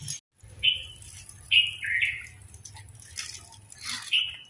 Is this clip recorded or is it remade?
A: recorded